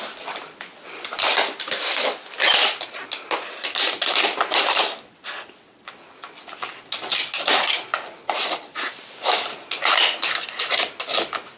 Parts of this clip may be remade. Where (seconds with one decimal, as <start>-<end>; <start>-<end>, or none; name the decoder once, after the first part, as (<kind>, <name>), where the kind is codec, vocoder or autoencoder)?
none